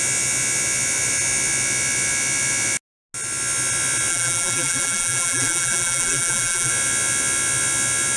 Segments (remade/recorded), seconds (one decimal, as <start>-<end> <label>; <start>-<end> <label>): 0.0-4.1 recorded; 4.1-6.7 remade; 6.7-8.2 recorded